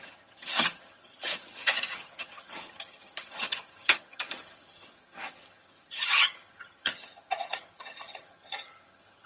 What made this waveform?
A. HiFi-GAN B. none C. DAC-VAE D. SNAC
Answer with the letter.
A